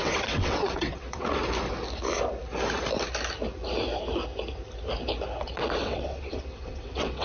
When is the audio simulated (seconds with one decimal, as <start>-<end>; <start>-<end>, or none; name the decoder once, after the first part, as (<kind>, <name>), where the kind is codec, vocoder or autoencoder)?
0.0-1.4 (vocoder, WaveNeXt); 5.4-7.2